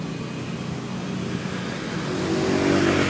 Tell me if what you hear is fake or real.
real